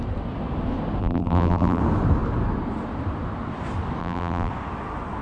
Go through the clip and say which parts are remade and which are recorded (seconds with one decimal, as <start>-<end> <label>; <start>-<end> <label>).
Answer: 0.0-1.0 recorded; 1.0-1.8 remade; 1.8-4.0 recorded; 4.0-4.5 remade; 4.5-5.2 recorded